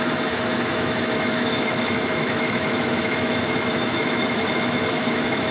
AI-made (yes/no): yes